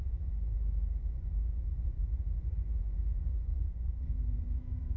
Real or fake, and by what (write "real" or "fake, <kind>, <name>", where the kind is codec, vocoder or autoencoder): fake, vocoder, Vocos